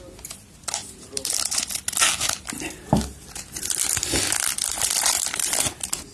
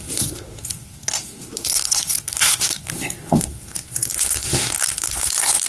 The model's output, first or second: second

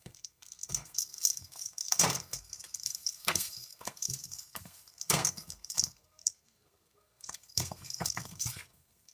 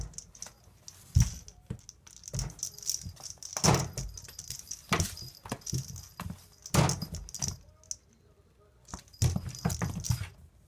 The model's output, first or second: first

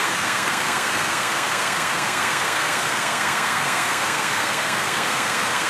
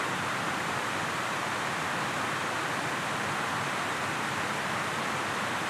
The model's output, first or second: first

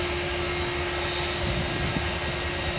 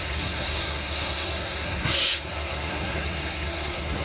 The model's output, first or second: second